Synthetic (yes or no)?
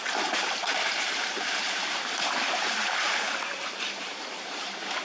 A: yes